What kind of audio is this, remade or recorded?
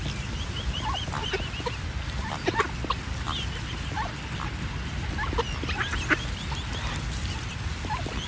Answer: recorded